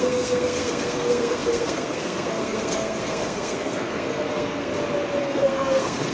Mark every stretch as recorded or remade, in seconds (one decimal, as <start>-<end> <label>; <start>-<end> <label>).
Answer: 0.0-4.7 remade; 4.7-5.2 recorded; 5.2-6.1 remade